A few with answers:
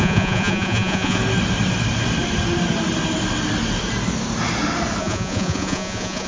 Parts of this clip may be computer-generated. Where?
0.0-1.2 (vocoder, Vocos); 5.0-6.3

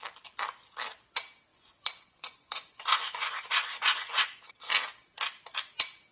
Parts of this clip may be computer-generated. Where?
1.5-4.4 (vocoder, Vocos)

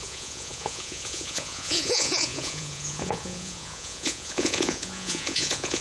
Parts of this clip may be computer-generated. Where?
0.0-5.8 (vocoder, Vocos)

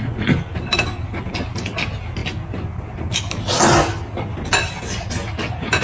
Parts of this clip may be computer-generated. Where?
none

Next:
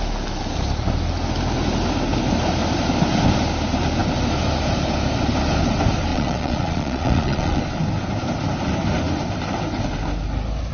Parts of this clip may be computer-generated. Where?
6.1-7.6 (vocoder, Vocos)

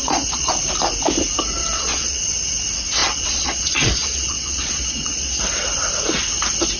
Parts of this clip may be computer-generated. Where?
0.0-0.5 (vocoder, Vocos); 1.6-2.2; 3.0-5.4

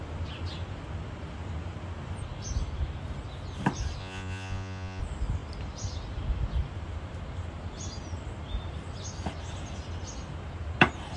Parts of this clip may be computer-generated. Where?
4.0-5.0 (vocoder, Vocos)